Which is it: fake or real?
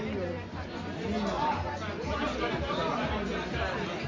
real